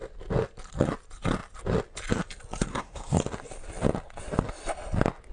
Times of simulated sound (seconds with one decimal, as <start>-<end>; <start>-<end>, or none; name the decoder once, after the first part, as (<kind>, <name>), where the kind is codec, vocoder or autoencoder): 2.7-3.2 (codec, SNAC)